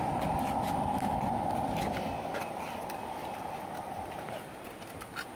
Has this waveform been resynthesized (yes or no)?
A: no